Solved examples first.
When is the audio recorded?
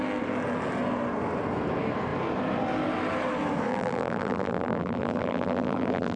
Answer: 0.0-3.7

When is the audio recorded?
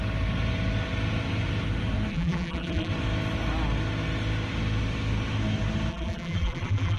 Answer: 0.0-2.1; 2.9-5.9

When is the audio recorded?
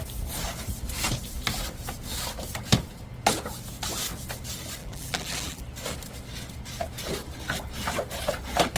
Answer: 0.0-4.8; 5.6-8.8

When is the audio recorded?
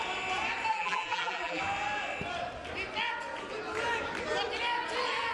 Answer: 0.0-0.7; 1.6-5.3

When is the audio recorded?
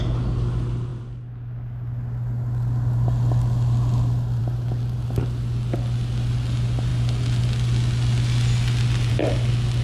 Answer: 0.0-9.8